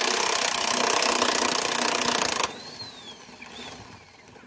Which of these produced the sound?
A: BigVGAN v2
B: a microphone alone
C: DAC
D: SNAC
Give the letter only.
B